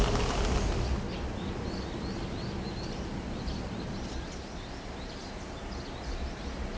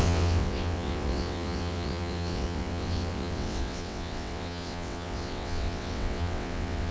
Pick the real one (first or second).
first